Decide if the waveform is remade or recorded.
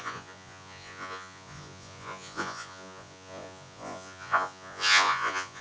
remade